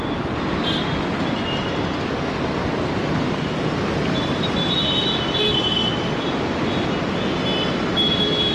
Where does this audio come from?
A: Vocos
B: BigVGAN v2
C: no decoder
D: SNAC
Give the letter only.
C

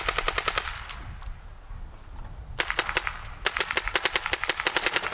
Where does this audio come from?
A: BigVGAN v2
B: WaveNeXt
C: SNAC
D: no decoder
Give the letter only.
D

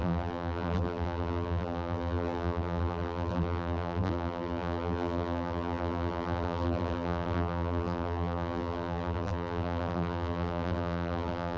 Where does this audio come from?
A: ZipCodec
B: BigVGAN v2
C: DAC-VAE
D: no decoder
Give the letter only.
B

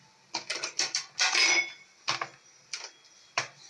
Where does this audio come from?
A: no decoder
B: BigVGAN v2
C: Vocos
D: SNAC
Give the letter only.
B